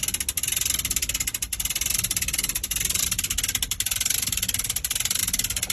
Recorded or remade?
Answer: recorded